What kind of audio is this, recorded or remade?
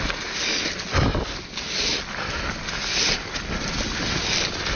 recorded